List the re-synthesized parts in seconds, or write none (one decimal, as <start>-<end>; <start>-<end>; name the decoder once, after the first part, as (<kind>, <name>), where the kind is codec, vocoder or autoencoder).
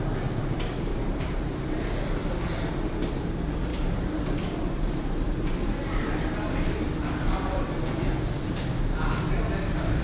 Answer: 0.9-1.8 (vocoder, BigVGAN v2); 3.7-8.6